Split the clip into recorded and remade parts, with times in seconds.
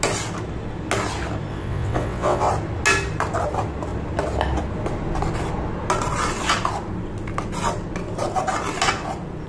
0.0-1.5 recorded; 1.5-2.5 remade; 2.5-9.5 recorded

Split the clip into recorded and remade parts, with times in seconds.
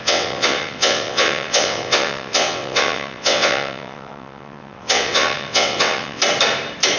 0.0-6.2 remade; 6.2-7.0 recorded